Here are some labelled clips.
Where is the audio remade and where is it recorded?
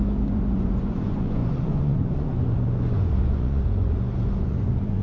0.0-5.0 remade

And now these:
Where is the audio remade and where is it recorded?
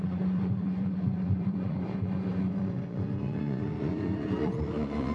0.0-5.1 remade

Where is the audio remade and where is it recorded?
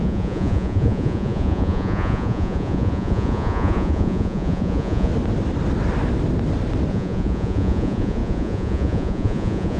0.0-5.1 remade; 5.1-6.9 recorded; 6.9-9.8 remade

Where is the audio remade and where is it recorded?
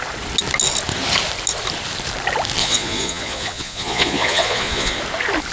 0.0-2.6 recorded; 2.6-5.0 remade; 5.0-5.5 recorded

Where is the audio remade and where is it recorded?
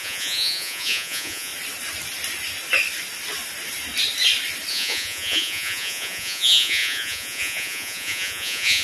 0.0-1.5 remade; 1.5-4.7 recorded; 4.7-8.8 remade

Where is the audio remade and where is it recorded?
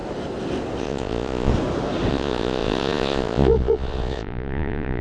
0.0-0.8 recorded; 0.8-1.5 remade; 1.5-2.1 recorded; 2.1-5.0 remade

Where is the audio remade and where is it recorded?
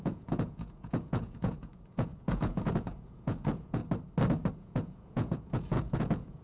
0.0-3.8 remade; 3.8-4.5 recorded; 4.5-6.4 remade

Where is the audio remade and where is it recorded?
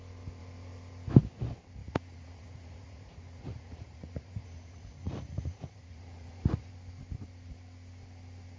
0.0-1.8 recorded; 1.8-6.7 remade; 6.7-8.6 recorded